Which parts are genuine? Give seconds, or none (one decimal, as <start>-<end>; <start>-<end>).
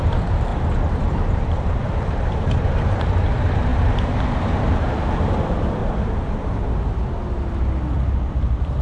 0.5-1.3; 5.8-8.3